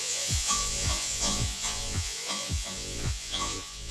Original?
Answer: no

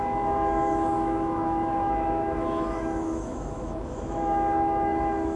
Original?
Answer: no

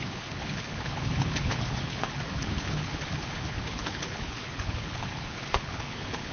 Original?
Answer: no